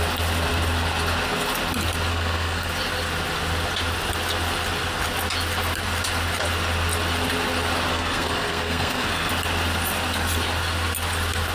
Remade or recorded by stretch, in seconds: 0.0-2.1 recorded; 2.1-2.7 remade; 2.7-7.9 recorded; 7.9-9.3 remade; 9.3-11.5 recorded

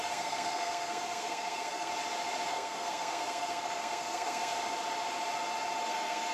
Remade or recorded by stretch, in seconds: 0.0-1.9 remade; 1.9-2.5 recorded; 2.5-4.5 remade; 4.5-5.8 recorded; 5.8-6.3 remade

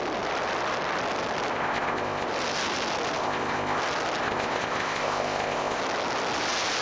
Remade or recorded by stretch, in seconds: 0.0-1.5 recorded; 1.5-2.3 remade; 2.3-3.2 recorded; 3.2-3.8 remade; 3.8-4.2 recorded; 4.2-5.8 remade; 5.8-6.8 recorded

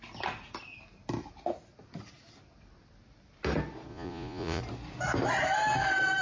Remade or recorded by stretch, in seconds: 0.0-3.9 recorded; 3.9-4.6 remade; 4.6-6.2 recorded

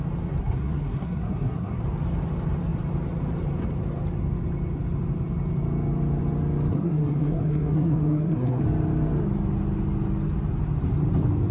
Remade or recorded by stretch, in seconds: 0.0-0.4 recorded; 0.4-1.8 remade; 1.8-6.7 recorded; 6.7-8.6 remade; 8.6-11.5 recorded